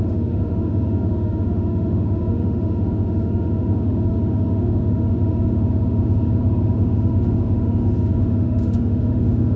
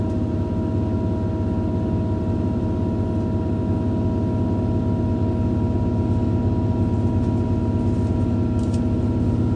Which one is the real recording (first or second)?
second